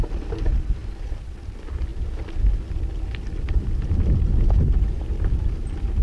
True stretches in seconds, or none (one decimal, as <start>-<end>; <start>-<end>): 0.0-6.0